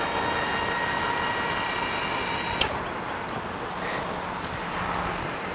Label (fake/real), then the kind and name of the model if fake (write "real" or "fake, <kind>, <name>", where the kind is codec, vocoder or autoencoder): real